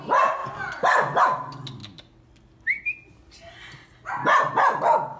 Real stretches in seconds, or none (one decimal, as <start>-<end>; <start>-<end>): 0.0-0.4; 1.2-5.2

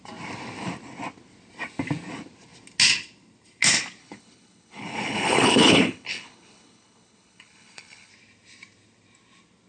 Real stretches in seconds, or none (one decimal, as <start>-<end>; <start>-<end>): 0.0-4.0; 8.1-9.7